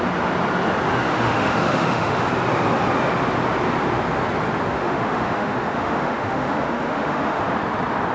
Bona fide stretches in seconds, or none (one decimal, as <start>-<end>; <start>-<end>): 0.0-1.1; 2.3-4.7; 7.4-8.1